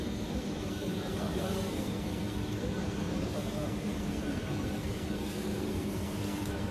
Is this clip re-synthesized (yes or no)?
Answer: yes